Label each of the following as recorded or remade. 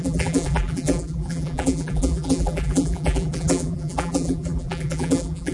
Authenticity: remade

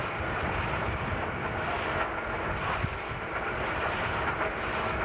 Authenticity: recorded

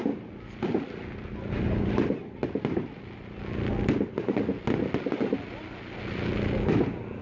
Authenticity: recorded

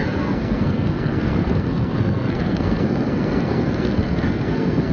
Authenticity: remade